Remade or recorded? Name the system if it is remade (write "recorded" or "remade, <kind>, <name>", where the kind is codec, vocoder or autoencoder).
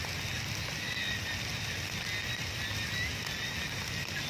recorded